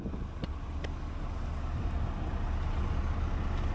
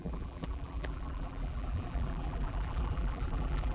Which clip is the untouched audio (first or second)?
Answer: first